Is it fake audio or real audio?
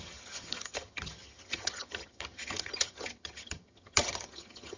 fake